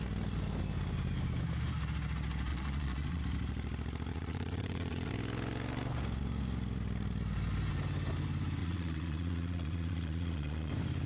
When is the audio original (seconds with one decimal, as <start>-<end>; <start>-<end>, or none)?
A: 0.0-2.5; 3.2-4.1; 5.1-8.6; 10.7-11.1